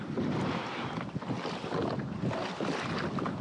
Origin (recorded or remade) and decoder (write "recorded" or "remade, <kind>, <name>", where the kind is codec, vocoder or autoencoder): recorded